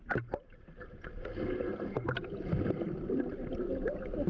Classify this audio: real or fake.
real